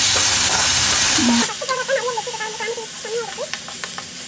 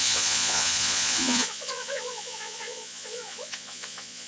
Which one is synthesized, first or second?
second